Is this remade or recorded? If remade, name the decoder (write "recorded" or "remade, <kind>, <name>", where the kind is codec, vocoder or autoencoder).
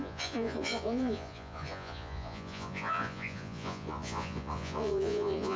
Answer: remade, vocoder, Vocos